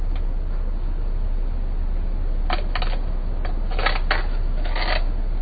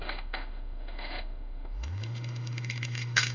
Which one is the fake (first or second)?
second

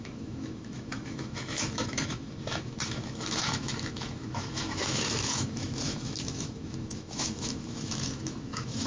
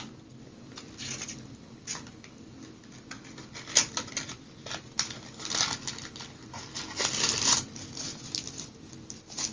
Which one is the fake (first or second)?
first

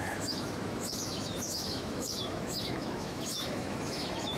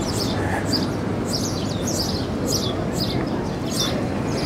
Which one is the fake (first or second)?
first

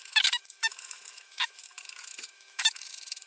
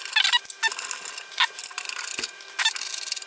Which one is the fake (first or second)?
first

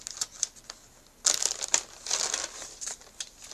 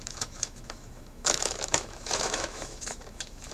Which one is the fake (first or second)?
second